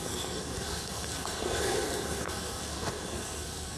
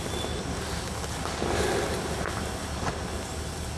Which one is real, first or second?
second